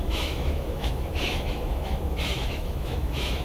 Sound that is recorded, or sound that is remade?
remade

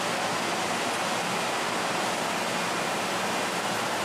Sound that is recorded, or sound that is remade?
recorded